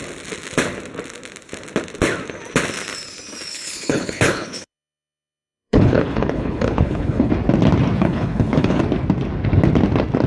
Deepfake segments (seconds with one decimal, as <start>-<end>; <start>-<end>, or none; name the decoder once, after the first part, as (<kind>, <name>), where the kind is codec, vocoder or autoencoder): 3.5-7.3 (codec, HILCodec); 8.0-8.8